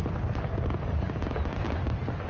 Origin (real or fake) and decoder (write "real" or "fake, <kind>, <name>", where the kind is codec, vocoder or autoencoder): real